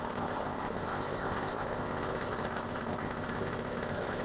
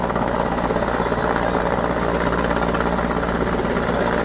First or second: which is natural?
second